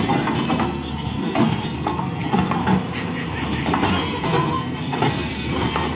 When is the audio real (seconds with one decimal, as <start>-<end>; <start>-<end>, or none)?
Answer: 2.6-3.9